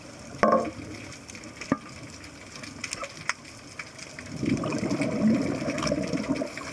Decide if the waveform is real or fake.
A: real